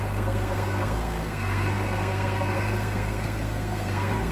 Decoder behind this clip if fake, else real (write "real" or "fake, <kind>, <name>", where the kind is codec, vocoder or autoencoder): fake, codec, SNAC